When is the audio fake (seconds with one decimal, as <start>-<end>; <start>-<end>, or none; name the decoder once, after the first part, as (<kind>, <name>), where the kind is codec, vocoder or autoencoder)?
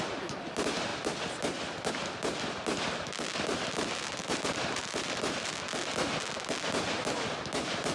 4.2-5.5 (vocoder, BigVGAN v2)